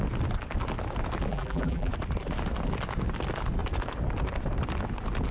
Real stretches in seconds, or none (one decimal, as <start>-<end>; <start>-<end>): 0.0-1.3; 1.9-5.3